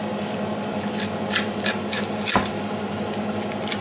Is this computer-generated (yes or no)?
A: no